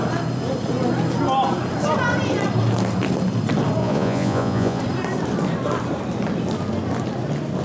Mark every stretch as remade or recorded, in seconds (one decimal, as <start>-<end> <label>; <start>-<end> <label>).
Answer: 0.0-3.8 recorded; 3.8-4.8 remade; 4.8-7.6 recorded